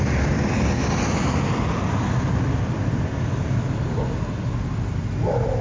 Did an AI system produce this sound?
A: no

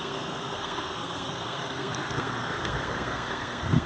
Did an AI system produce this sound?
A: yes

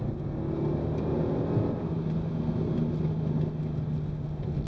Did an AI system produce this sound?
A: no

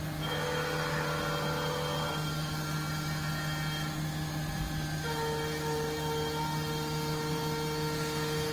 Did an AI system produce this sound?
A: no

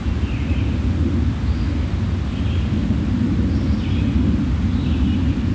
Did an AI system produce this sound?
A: no